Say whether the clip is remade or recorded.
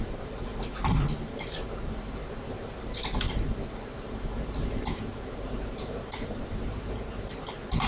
remade